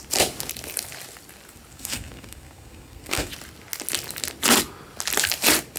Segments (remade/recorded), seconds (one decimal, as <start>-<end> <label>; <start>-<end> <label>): 0.0-1.7 recorded; 1.7-3.3 remade; 3.3-5.8 recorded